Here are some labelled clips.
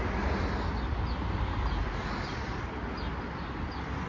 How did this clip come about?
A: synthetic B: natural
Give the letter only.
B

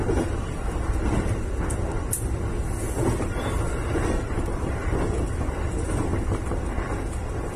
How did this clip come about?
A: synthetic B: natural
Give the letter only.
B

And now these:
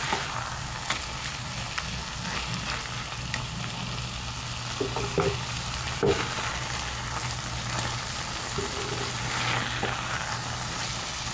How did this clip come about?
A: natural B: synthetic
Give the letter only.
A